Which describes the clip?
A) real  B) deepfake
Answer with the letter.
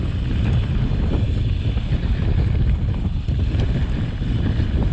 A